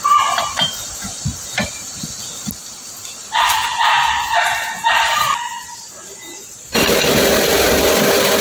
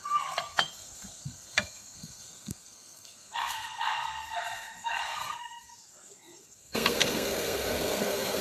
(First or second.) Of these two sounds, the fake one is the second